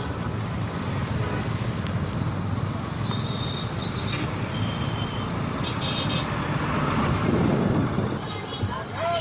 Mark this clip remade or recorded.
recorded